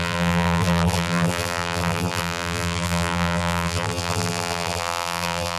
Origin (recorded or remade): remade